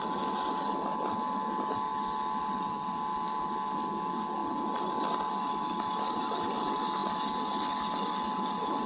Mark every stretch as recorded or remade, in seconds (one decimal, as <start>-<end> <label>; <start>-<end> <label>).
0.0-8.9 recorded